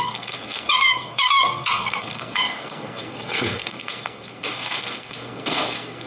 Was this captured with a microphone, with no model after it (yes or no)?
no